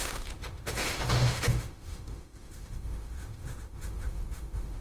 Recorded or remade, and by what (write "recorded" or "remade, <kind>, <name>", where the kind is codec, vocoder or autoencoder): remade, autoencoder, DAC-VAE